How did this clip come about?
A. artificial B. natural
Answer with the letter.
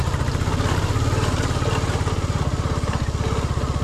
B